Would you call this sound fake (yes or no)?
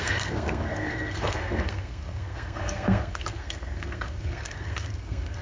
yes